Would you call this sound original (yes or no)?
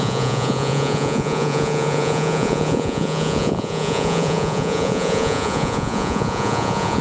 no